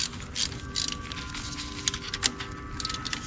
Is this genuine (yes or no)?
yes